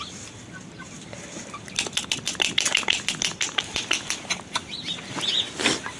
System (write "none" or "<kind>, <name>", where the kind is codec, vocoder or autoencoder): none